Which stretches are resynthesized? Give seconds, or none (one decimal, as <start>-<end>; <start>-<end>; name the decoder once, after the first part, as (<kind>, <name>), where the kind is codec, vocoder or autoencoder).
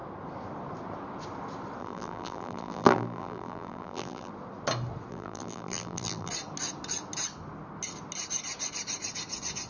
1.8-4.3 (vocoder, BigVGAN v2); 5.1-6.3